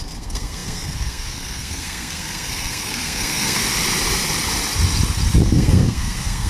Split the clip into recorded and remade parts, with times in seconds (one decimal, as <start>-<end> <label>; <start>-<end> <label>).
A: 0.0-3.6 remade; 3.6-5.4 recorded; 5.4-6.5 remade